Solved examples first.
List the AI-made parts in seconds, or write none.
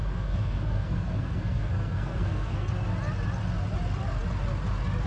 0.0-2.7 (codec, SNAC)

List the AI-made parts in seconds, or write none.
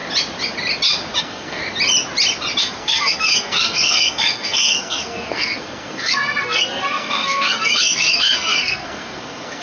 1.2-1.6 (codec, SNAC); 2.6-9.6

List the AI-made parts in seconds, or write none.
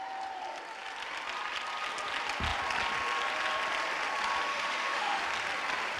4.5-5.2 (autoencoder, DAC-VAE)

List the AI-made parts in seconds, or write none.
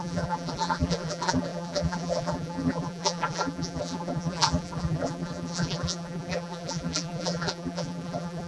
0.0-8.5 (vocoder, BigVGAN v2)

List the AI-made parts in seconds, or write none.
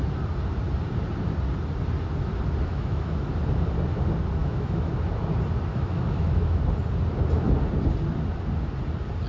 2.7-3.3 (autoencoder, DAC-VAE); 4.4-4.9; 5.7-6.6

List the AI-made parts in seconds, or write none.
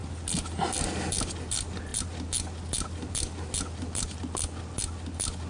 none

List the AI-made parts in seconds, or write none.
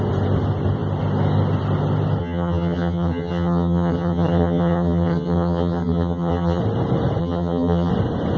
2.2-6.6 (vocoder, HiFi-GAN); 7.2-7.9